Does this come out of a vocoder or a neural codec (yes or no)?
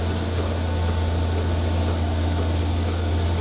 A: no